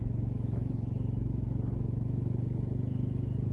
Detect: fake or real fake